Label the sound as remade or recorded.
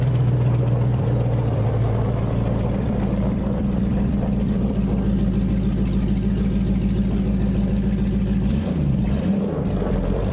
remade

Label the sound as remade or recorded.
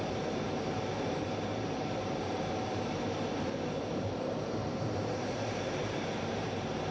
remade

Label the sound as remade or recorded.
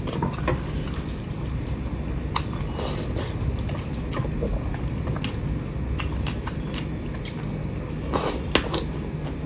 recorded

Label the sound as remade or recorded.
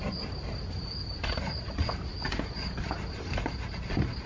recorded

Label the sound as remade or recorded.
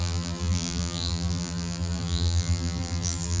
remade